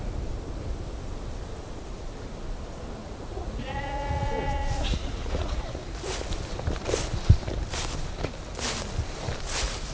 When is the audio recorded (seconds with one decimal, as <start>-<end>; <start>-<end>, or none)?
0.0-3.0; 5.8-9.9